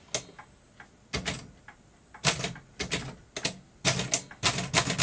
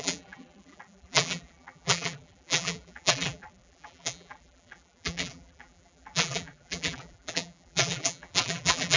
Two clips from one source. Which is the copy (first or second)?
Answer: second